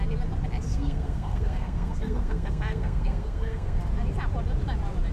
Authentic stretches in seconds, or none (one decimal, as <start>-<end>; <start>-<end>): 0.0-0.7; 3.8-5.1